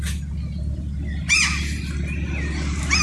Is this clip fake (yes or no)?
no